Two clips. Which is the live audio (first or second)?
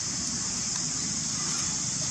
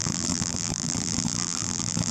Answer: first